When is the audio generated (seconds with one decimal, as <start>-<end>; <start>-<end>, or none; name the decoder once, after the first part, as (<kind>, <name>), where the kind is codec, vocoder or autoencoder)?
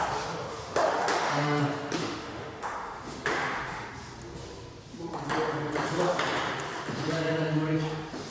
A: 0.5-1.6 (autoencoder, DAC-VAE); 2.0-3.9